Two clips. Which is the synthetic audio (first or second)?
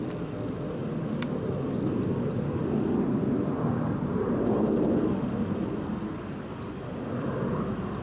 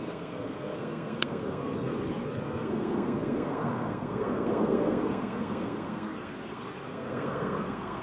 second